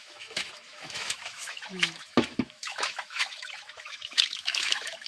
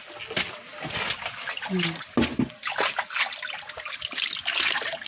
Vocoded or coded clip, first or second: first